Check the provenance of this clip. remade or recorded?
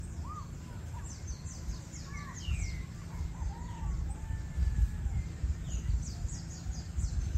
recorded